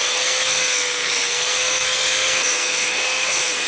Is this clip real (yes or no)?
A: no